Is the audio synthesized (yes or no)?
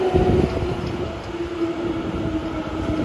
no